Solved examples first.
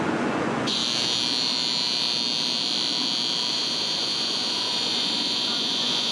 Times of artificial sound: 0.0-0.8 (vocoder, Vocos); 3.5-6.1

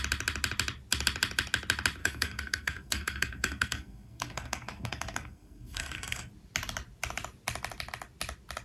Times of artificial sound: 2.0-6.3 (codec, SNAC)

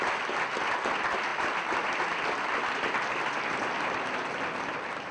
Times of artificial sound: 1.3-3.4 (vocoder, BigVGAN v2)

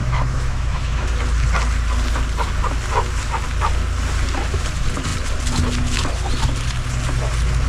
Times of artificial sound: 0.0-1.1 (autoencoder, DAC-VAE)

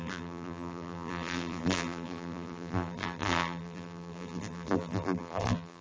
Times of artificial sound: 0.0-5.8 (vocoder, BigVGAN v2)

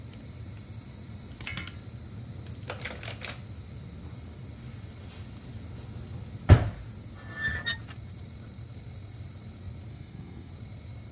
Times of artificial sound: 9.9-10.5 (codec, SNAC)